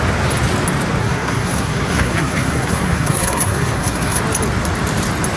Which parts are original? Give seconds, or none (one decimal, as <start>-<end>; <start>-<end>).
0.0-1.0; 4.2-5.4